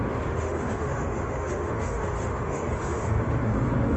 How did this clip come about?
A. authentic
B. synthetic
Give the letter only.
B